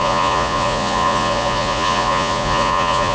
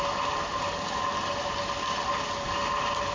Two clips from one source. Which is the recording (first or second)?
second